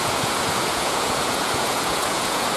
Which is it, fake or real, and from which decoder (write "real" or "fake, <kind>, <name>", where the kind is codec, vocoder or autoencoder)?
fake, vocoder, Vocos